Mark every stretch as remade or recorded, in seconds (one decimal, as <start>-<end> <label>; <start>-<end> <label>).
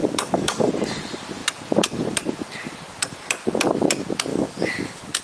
0.0-0.7 remade; 0.7-4.3 recorded; 4.3-5.2 remade